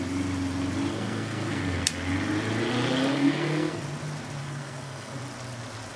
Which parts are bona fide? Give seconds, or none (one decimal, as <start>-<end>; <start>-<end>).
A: 0.0-0.9; 1.9-3.1; 3.8-4.4; 5.2-6.0